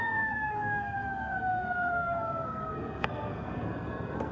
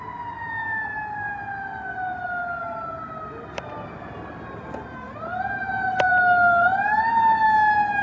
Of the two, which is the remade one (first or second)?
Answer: first